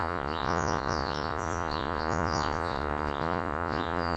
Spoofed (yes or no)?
yes